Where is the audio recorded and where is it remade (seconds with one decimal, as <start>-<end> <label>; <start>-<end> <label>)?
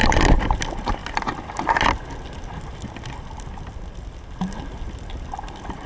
0.0-5.9 recorded